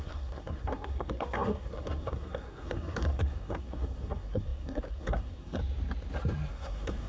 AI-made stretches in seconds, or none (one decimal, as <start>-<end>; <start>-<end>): 0.0-5.6; 6.5-7.1